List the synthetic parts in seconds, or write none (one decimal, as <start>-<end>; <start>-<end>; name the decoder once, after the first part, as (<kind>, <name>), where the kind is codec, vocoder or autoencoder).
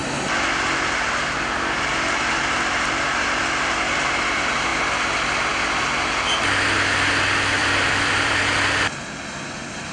7.6-8.4 (vocoder, BigVGAN v2)